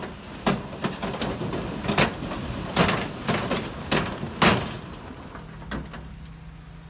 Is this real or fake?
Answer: real